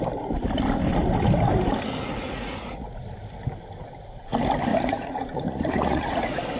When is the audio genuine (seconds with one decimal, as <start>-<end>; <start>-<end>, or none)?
0.0-2.0; 3.0-4.7